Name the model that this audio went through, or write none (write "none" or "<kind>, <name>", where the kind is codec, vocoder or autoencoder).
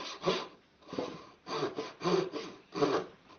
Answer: none